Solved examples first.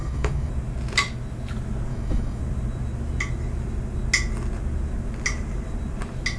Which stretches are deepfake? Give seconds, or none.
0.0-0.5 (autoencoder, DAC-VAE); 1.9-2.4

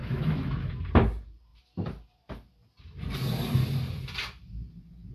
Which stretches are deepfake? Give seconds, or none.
0.0-0.7 (autoencoder, DAC-VAE)

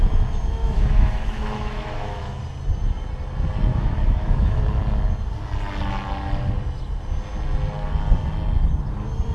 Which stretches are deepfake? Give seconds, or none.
0.6-2.4 (autoencoder, DAC-VAE); 3.7-4.6

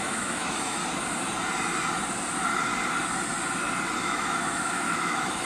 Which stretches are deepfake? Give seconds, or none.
0.0-0.8 (autoencoder, DAC-VAE); 4.0-5.4

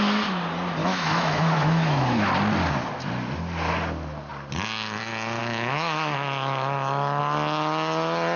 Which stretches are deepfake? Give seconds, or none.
0.8-2.3 (autoencoder, DAC-VAE); 5.4-7.2

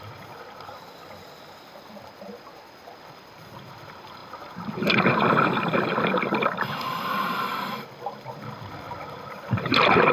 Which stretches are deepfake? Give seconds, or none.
none